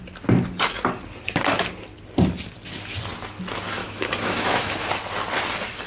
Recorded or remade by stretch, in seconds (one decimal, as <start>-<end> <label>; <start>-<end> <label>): 0.0-3.8 recorded; 3.8-4.8 remade; 4.8-5.9 recorded